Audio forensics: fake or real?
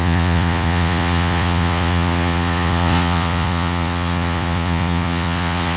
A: fake